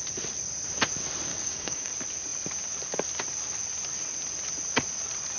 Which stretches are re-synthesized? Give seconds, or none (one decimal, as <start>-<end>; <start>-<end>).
1.3-1.9